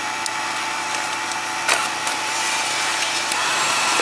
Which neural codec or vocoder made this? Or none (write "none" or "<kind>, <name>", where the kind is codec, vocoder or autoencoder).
none